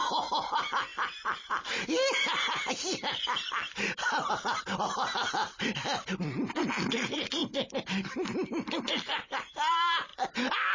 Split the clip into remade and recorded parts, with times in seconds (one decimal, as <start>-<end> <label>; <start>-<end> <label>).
0.0-10.7 recorded